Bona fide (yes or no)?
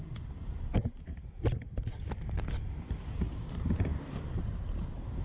no